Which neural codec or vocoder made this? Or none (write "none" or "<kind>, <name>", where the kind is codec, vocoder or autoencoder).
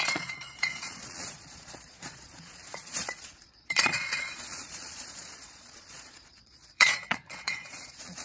vocoder, Vocos